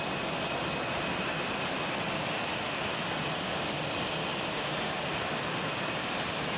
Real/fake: real